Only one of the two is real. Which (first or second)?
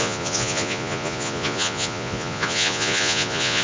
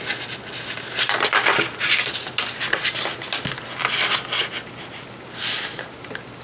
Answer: second